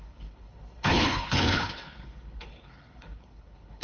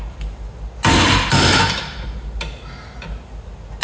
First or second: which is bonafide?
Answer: second